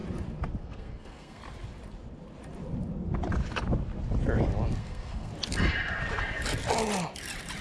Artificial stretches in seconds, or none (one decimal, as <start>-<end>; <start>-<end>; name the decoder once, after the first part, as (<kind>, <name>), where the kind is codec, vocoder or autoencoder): 0.6-1.4 (codec, SNAC); 4.8-5.3